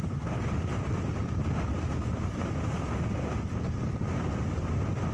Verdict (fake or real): real